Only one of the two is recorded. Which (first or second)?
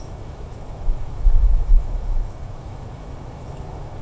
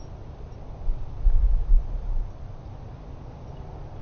second